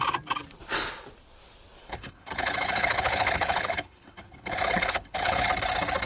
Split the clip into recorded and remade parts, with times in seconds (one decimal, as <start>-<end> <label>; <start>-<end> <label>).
0.0-1.8 recorded; 1.8-5.5 remade; 5.5-6.1 recorded